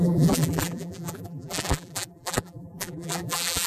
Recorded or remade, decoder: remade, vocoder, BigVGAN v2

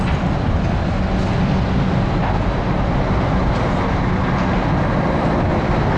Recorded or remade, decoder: recorded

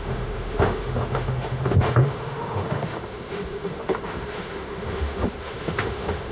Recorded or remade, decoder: remade, autoencoder, DAC-VAE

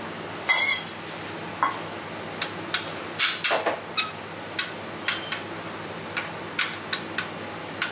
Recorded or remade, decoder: recorded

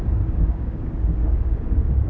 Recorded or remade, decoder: remade, codec, DAC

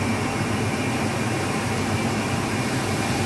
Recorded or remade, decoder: recorded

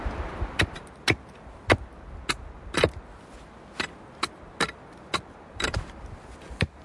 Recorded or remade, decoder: recorded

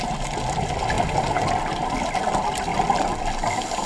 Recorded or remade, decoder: recorded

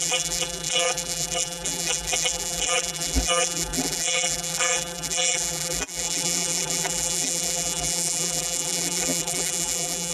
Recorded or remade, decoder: remade, vocoder, BigVGAN v2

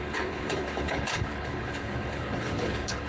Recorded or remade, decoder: remade, codec, HILCodec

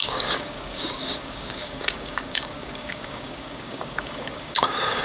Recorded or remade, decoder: remade, codec, DAC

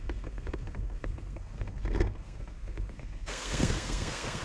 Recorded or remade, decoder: remade, codec, SNAC